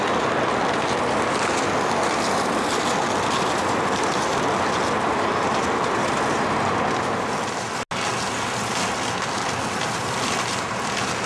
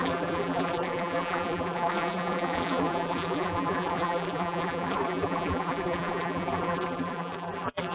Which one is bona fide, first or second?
first